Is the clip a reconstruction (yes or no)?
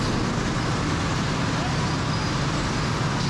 no